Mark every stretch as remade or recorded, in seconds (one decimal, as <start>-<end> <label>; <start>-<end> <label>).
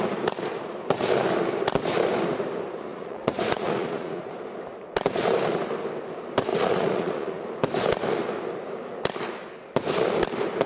0.0-2.8 recorded; 2.8-4.2 remade; 4.2-6.5 recorded; 6.5-7.4 remade; 7.4-10.7 recorded